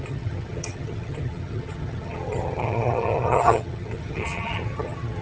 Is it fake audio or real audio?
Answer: fake